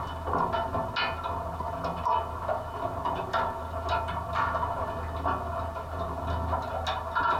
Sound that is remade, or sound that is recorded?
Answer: recorded